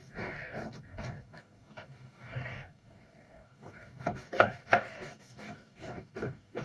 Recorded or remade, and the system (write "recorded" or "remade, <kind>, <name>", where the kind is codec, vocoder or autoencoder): remade, codec, DAC